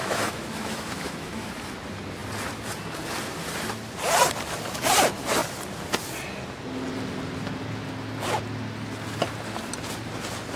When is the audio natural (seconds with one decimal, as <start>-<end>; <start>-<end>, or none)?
1.5-10.6